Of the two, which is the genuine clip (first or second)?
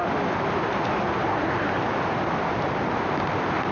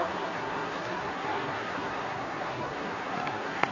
first